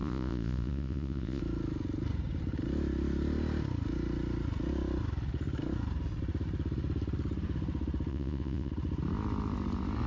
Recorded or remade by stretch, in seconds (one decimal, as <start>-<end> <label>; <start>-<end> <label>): 0.0-1.4 remade; 1.4-8.1 recorded; 8.1-8.7 remade; 8.7-10.1 recorded